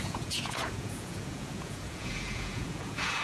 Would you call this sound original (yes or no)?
no